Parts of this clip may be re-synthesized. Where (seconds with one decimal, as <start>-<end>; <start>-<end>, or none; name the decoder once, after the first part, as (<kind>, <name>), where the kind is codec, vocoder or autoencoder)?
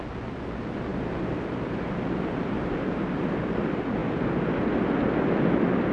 0.9-1.9 (vocoder, BigVGAN v2)